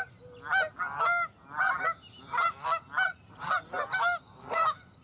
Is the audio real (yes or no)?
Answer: yes